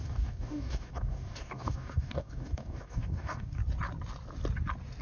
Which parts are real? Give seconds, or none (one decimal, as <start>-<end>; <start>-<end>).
3.6-5.0